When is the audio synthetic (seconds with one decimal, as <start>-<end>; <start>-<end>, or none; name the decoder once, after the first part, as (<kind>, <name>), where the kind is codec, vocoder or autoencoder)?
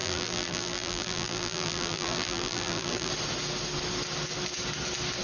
0.0-3.1 (vocoder, BigVGAN v2)